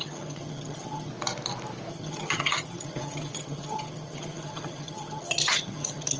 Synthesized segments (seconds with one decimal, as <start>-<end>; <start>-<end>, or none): 0.0-1.1; 1.9-6.2